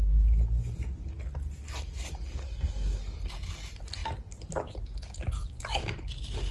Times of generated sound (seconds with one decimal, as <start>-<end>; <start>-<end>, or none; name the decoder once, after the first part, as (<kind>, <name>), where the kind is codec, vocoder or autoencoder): 2.4-3.0 (codec, SNAC)